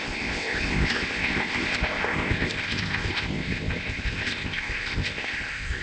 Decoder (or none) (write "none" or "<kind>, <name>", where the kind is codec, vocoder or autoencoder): codec, ZipCodec